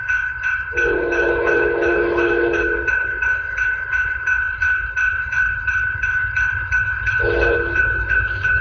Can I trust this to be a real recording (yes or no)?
no